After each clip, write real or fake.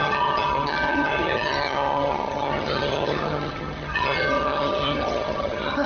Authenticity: fake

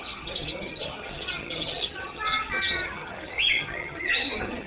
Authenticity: fake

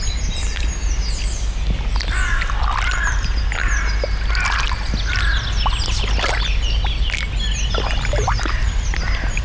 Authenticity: real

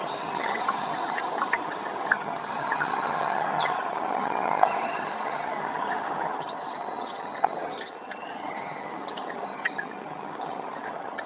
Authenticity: fake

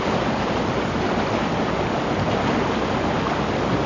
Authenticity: real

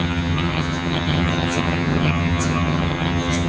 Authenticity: fake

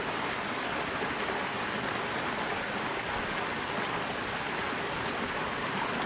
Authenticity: real